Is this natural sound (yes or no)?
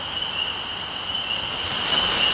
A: yes